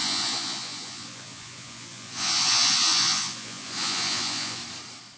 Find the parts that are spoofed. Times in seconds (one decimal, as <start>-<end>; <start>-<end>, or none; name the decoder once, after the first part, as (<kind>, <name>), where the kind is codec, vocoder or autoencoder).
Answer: 0.0-4.6 (vocoder, Vocos)